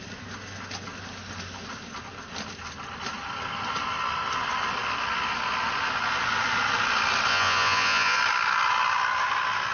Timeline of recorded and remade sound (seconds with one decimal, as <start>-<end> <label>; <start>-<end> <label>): 0.0-7.3 recorded; 7.3-8.2 remade; 8.2-9.7 recorded